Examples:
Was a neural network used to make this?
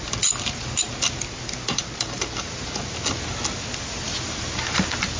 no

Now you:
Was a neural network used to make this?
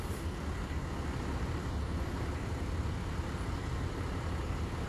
no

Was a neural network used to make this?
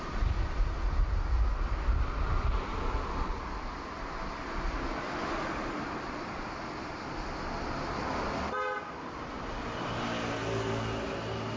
no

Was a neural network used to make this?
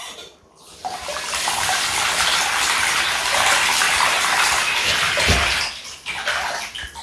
no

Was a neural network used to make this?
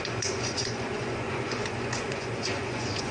yes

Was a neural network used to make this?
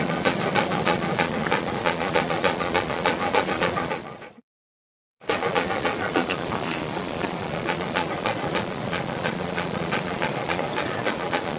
yes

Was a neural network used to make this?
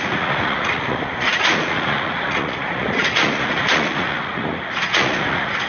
yes